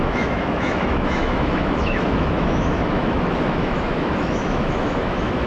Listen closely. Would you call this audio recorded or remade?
remade